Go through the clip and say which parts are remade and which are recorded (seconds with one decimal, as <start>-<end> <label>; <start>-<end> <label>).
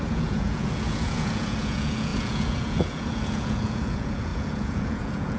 0.0-5.4 remade